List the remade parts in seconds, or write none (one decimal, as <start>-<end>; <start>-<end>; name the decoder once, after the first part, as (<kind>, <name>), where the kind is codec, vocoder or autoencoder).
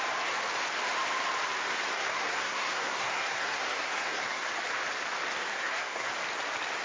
1.9-4.5 (codec, SNAC); 5.5-6.1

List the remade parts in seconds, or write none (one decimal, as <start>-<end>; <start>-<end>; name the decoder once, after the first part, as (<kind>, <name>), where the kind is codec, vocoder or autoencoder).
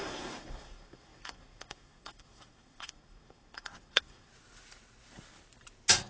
0.0-4.3 (codec, SNAC)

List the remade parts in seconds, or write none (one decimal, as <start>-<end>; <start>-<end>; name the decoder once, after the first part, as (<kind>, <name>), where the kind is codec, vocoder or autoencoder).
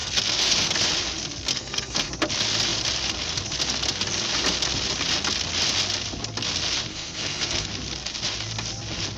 0.0-0.7 (codec, SNAC); 1.5-2.1; 6.9-7.7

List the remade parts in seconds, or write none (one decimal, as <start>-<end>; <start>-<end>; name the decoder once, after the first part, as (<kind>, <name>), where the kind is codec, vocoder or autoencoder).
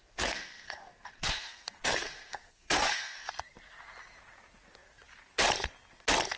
0.0-3.3 (codec, SNAC)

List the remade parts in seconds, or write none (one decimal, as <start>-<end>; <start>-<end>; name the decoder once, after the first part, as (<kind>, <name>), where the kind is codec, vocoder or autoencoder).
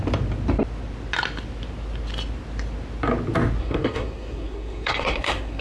3.6-5.6 (codec, SNAC)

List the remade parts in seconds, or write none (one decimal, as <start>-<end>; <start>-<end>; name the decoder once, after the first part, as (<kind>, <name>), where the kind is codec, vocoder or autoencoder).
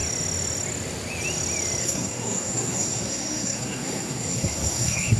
1.8-5.2 (codec, SNAC)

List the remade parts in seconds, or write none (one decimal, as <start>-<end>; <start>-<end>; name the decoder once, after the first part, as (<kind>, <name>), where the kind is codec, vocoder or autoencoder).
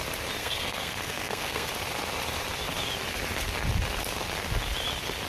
0.4-1.7 (codec, SNAC)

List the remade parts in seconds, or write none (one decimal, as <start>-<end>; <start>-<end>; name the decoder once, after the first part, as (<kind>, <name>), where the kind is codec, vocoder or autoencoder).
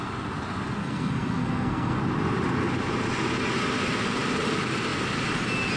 0.8-2.0 (codec, SNAC)